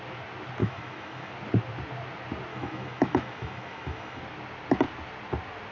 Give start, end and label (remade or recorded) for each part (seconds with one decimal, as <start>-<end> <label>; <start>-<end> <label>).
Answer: 0.0-0.6 recorded; 0.6-1.3 remade; 1.3-2.5 recorded; 2.5-4.2 remade; 4.2-5.7 recorded

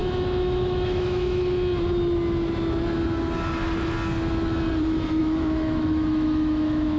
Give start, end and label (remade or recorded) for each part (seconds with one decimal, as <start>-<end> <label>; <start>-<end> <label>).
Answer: 0.0-1.4 remade; 1.4-5.2 recorded; 5.2-7.0 remade